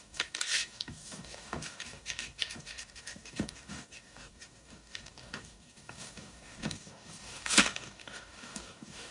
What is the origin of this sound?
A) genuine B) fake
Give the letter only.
B